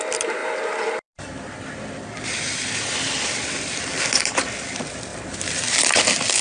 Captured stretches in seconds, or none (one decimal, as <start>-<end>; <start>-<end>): 0.0-0.4; 4.2-5.1; 5.9-6.4

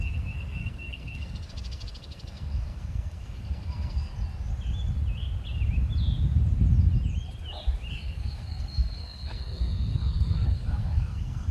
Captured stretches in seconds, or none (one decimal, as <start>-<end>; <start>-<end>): 4.1-7.9

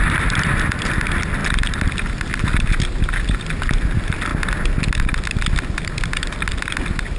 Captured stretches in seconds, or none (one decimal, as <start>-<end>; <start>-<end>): 0.0-7.2

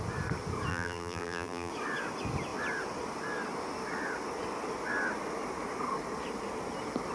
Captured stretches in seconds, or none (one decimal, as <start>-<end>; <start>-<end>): 0.0-0.7; 1.7-7.1